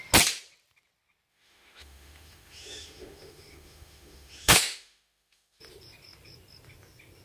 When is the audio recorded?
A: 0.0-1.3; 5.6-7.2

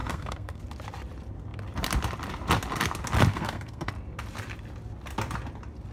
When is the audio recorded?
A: 0.6-3.3; 3.9-5.9

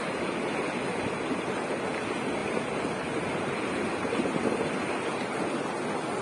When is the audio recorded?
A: 0.0-6.2

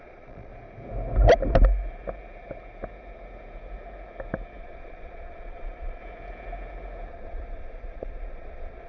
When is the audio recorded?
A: 0.5-4.6; 6.0-7.1

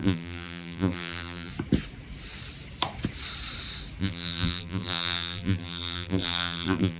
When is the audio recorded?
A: 1.5-4.0

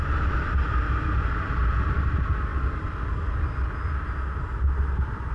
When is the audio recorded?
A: 0.0-5.3

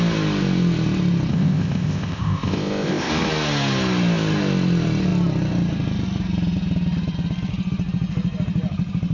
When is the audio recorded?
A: 0.0-1.3; 3.1-9.1